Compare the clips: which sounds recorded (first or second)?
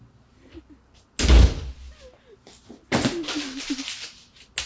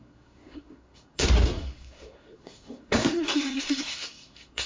first